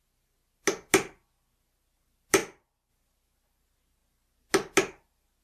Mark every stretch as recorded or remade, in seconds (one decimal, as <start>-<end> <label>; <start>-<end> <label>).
0.0-5.4 recorded